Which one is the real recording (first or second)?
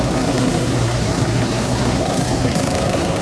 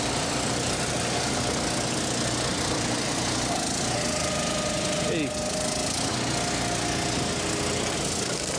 second